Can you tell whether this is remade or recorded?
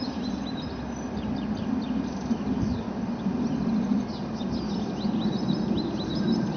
recorded